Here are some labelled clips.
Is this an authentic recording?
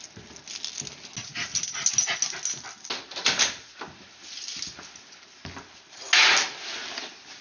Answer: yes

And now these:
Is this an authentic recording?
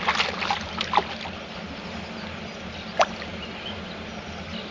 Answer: yes